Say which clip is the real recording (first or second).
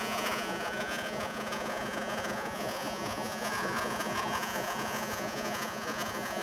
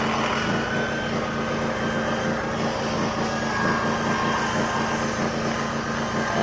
second